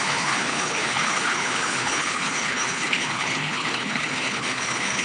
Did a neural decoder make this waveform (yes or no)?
yes